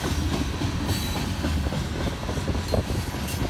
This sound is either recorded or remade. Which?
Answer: recorded